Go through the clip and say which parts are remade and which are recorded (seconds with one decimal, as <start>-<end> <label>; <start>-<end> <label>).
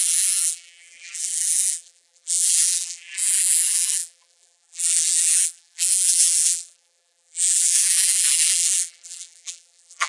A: 0.0-10.1 remade